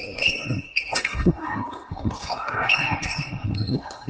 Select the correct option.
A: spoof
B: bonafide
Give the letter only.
A